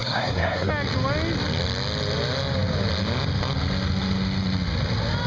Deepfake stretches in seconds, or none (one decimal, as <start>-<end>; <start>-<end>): 0.0-0.7